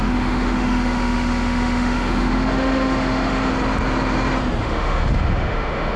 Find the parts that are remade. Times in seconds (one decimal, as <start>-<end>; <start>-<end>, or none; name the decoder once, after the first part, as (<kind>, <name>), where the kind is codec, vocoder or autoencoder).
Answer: 0.0-3.5 (autoencoder, DAC-VAE); 4.6-6.0